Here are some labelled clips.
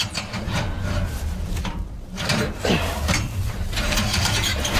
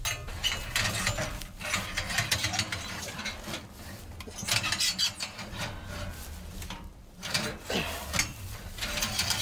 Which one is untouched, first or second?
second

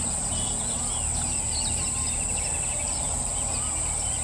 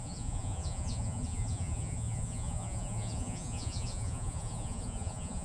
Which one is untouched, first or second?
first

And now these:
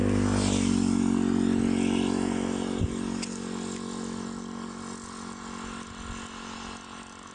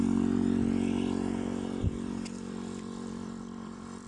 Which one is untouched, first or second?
first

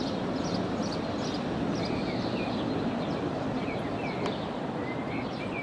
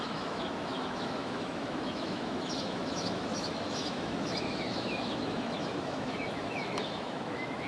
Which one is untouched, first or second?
first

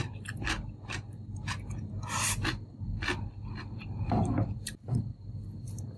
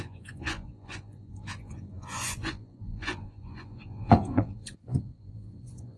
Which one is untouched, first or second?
first